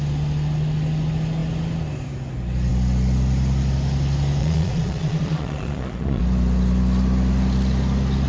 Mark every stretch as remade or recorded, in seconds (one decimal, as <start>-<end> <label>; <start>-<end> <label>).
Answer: 0.0-4.4 recorded; 4.4-6.2 remade; 6.2-8.3 recorded